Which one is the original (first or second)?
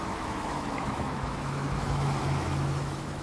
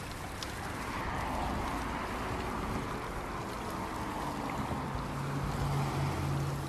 second